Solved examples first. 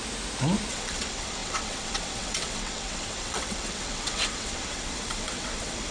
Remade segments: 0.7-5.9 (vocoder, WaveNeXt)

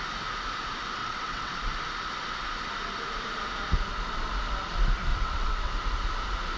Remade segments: 1.0-1.6 (vocoder, WaveNeXt); 5.1-5.7